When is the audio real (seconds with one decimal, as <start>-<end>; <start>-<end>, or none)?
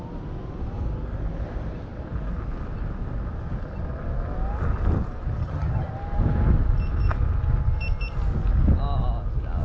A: 0.0-5.4; 5.9-9.6